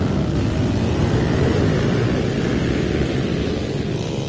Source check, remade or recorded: recorded